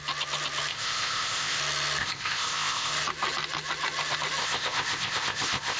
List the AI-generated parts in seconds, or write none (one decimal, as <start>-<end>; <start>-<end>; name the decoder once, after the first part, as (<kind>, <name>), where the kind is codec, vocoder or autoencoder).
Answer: 0.7-1.6 (codec, ZipCodec); 2.0-2.9; 4.4-5.8